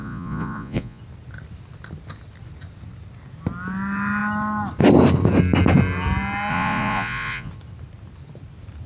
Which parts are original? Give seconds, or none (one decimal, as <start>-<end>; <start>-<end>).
1.0-6.5; 7.5-8.9